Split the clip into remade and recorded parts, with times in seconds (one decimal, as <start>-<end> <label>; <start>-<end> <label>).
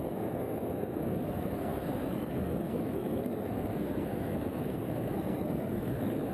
0.0-6.3 remade